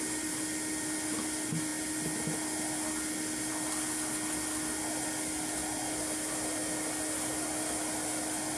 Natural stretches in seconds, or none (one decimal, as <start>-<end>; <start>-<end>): 0.0-8.6